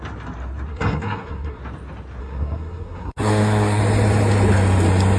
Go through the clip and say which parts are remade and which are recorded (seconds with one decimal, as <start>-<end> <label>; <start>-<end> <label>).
0.0-0.7 recorded; 0.7-1.6 remade; 1.6-2.2 recorded; 2.2-3.8 remade; 3.8-5.2 recorded